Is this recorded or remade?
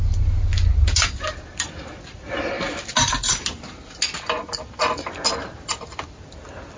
recorded